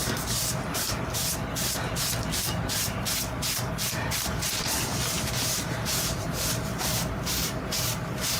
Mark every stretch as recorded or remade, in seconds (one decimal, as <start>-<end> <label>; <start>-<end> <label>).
0.0-4.0 recorded; 4.0-8.4 remade